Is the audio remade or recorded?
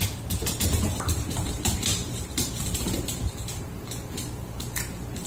remade